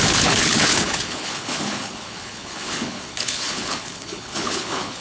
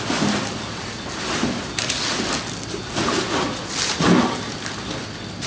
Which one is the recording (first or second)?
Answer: second